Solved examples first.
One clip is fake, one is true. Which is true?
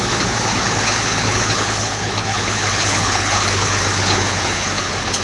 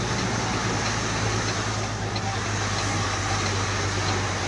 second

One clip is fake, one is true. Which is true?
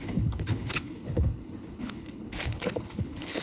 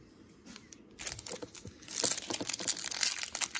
second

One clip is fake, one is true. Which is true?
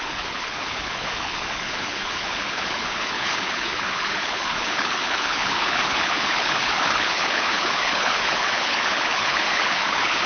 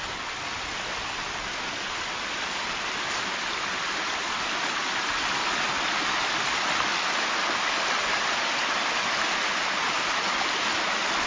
second